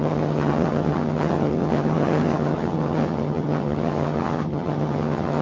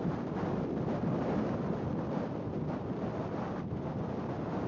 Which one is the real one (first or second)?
second